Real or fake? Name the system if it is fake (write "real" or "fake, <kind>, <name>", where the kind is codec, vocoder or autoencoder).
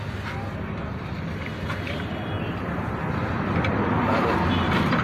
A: real